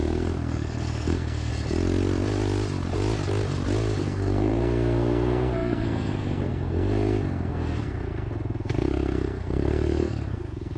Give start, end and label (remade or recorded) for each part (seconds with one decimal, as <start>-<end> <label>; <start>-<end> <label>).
0.0-1.5 remade; 1.5-4.0 recorded; 4.0-10.8 remade